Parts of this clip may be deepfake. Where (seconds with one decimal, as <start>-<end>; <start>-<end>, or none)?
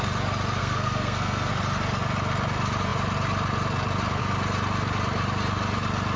0.6-1.5